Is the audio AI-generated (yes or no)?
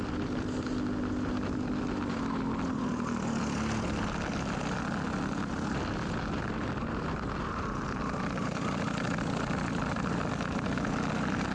no